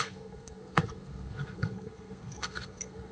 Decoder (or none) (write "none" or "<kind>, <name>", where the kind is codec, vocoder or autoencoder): codec, SNAC